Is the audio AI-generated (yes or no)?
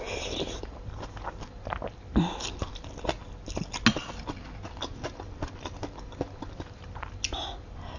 no